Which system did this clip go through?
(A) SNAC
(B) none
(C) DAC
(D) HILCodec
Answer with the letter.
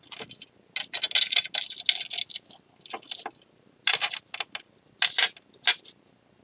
B